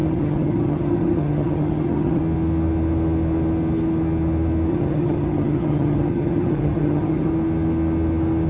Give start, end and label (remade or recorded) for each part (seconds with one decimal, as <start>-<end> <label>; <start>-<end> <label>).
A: 0.0-2.2 remade; 2.2-4.7 recorded; 4.7-7.3 remade; 7.3-8.5 recorded